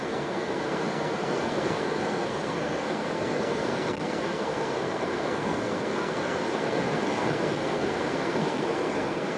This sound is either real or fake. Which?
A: fake